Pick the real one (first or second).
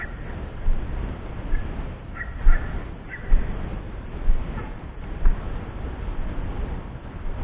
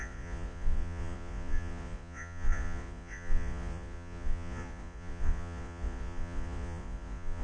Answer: first